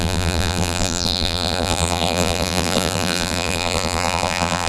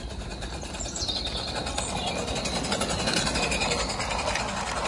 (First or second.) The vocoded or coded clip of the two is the first